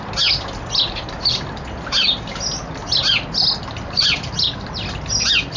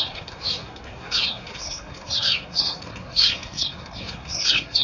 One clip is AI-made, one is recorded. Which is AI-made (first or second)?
second